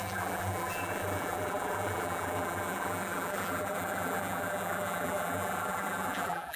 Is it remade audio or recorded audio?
remade